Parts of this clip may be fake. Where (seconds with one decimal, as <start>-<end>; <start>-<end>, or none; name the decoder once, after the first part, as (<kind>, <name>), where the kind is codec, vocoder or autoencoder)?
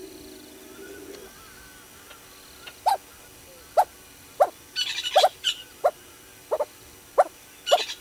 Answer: none